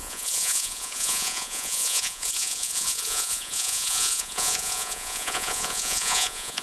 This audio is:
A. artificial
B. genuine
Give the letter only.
A